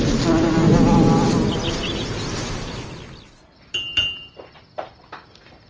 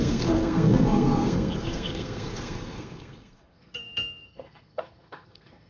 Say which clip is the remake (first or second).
second